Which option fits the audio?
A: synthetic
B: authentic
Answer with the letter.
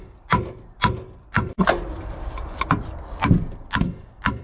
A